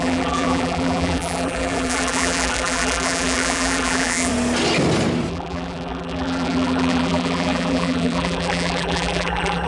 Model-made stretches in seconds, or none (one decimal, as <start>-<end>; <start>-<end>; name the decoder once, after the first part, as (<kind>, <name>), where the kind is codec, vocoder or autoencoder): 0.0-4.3 (vocoder, BigVGAN v2); 5.3-9.7